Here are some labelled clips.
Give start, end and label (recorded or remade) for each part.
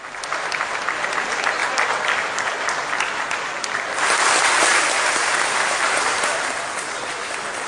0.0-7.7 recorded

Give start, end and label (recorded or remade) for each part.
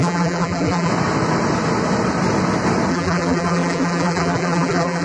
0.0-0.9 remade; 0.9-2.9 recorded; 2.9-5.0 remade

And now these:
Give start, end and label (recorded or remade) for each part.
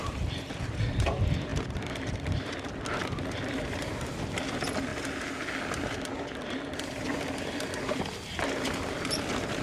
0.0-9.6 recorded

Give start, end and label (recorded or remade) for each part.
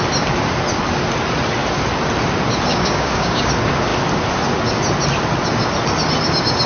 0.0-2.7 recorded; 2.7-3.5 remade; 3.5-6.7 recorded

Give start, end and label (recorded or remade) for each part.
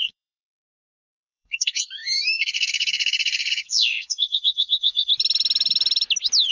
0.0-5.1 remade; 5.1-6.5 recorded